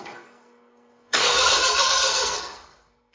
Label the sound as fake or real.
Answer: fake